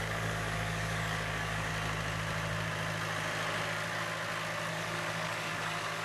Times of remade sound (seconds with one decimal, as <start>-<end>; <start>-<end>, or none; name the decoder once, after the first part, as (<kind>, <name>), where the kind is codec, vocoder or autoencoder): 0.0-1.7 (codec, DAC); 4.7-6.0